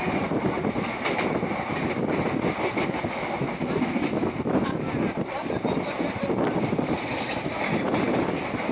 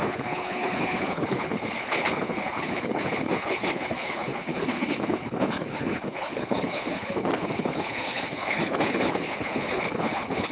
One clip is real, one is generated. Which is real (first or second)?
first